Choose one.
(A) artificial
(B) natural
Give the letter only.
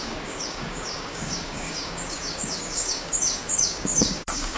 A